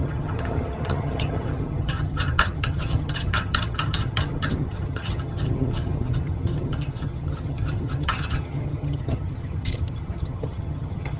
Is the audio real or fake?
fake